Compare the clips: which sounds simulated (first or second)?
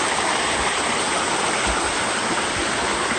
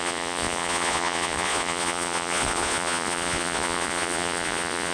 second